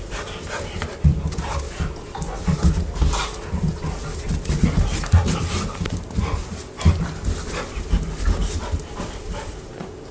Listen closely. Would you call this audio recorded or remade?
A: recorded